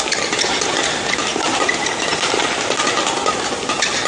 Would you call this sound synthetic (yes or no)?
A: no